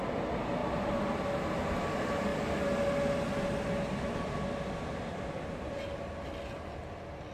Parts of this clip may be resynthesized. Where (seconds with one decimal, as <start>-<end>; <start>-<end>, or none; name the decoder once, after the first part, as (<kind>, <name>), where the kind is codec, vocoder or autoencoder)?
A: none